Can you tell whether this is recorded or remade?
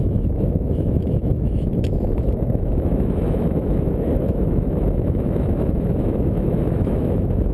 remade